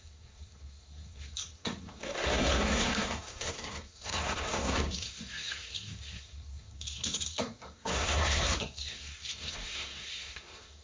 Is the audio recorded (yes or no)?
no